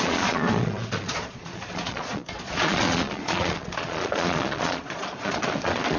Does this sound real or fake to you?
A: fake